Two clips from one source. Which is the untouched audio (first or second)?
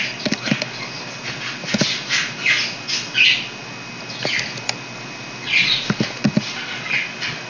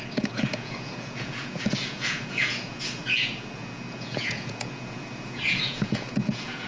first